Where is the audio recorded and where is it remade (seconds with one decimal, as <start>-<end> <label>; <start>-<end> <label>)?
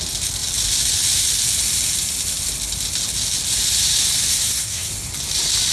0.0-4.3 recorded; 4.3-4.9 remade; 4.9-5.7 recorded